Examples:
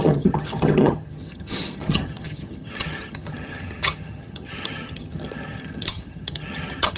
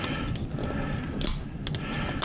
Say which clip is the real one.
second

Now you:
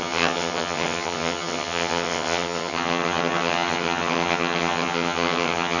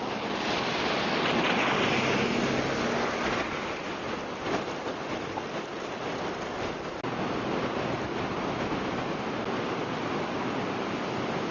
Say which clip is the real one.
second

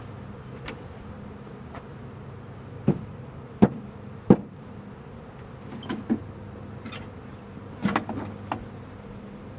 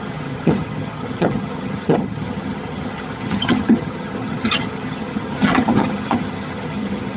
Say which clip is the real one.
first